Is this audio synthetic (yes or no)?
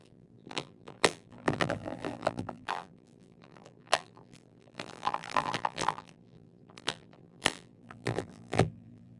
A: yes